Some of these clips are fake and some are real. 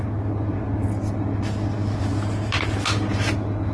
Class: real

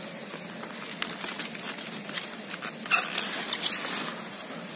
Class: real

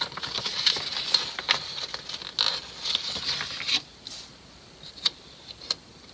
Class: real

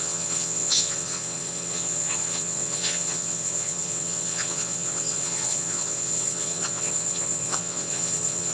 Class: fake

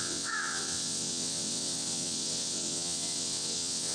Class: fake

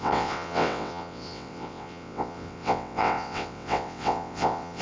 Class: fake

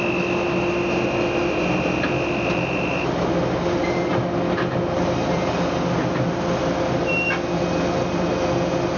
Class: real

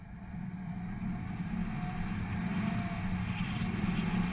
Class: real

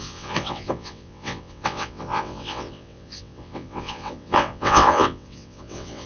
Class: fake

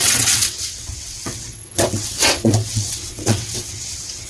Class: fake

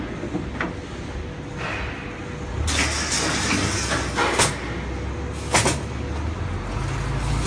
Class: real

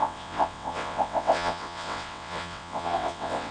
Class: fake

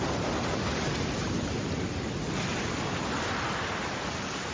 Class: real